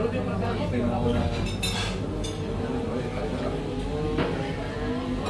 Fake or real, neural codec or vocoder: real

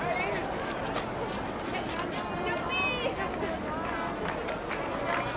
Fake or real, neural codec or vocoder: real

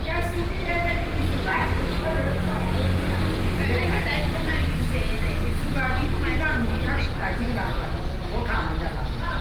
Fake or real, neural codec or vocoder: real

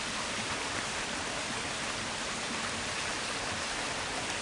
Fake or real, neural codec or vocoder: real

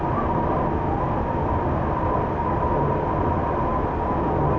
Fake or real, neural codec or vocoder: real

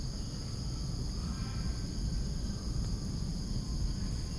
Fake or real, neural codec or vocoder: real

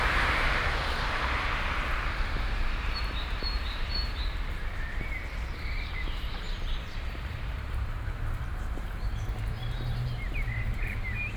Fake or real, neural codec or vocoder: fake, vocoder, BigVGAN v2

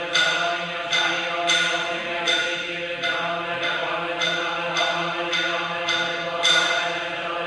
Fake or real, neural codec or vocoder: real